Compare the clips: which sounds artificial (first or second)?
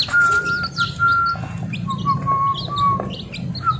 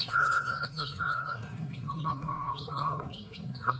second